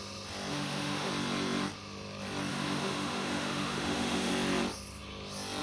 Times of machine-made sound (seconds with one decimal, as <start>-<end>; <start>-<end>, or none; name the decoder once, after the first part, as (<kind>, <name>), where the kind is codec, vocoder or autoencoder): 0.5-1.1 (autoencoder, DAC-VAE); 2.5-4.3